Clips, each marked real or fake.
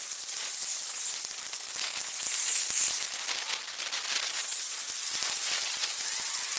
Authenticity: real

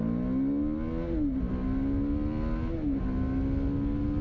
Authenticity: real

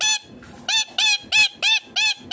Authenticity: real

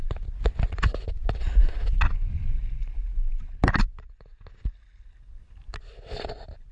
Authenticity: real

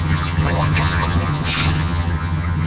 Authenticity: fake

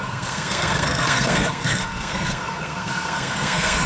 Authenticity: fake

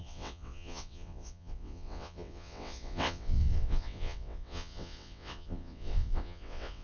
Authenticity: fake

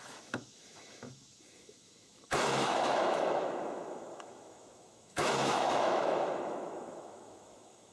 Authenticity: fake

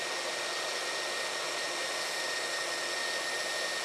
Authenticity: real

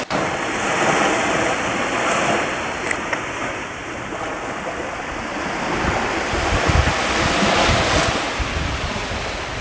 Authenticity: real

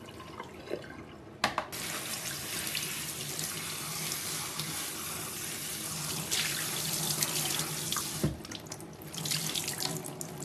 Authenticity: real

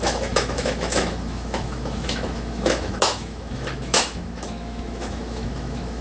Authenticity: fake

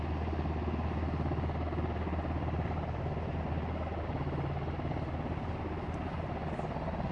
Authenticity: real